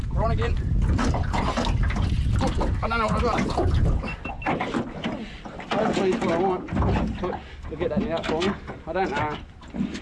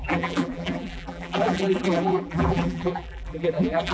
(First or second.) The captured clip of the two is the first